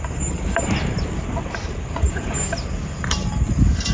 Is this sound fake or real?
real